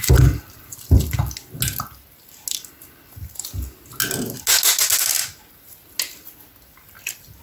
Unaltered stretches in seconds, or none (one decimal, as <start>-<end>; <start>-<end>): 0.0-7.4